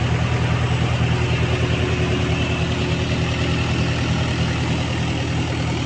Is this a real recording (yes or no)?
yes